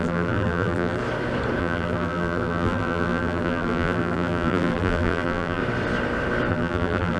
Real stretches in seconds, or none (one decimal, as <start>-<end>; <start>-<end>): 1.0-1.6; 5.6-6.5